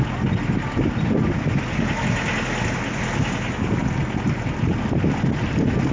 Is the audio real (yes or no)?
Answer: yes